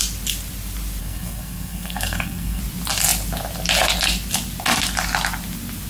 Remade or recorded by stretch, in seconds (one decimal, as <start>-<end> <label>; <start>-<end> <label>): 0.0-1.0 recorded; 1.0-2.6 remade; 2.6-5.9 recorded